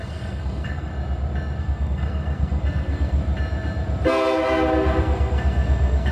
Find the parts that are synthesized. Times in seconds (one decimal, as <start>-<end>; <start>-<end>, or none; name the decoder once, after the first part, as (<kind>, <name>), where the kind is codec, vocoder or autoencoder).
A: 0.0-0.9 (codec, SNAC); 1.6-3.2; 5.0-6.1